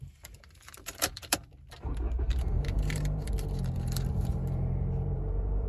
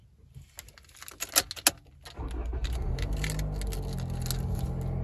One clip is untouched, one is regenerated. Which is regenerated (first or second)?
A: first